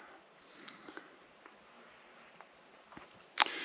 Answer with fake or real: real